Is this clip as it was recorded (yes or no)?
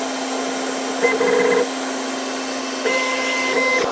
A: yes